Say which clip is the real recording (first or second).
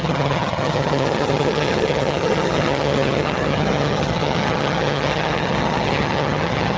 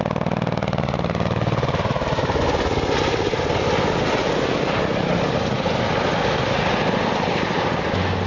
second